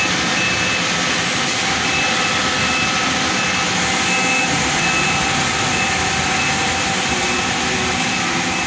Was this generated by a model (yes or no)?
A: no